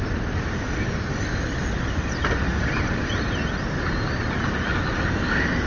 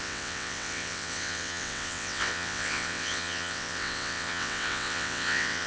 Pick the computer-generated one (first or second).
second